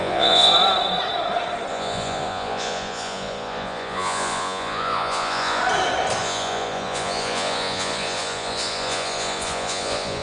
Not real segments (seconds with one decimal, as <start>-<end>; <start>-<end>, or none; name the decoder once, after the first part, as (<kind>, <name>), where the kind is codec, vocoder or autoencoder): 0.0-0.5 (vocoder, Vocos); 1.7-5.6; 6.2-10.2